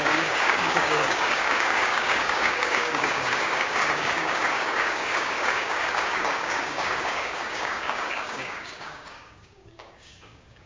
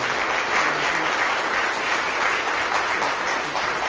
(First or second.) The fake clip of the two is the first